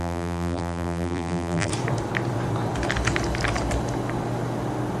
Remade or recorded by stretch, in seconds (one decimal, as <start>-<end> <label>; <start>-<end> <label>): 0.0-1.7 remade; 1.7-5.0 recorded